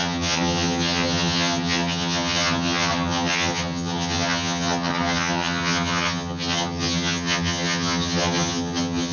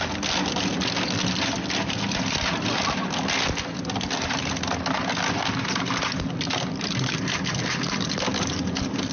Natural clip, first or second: second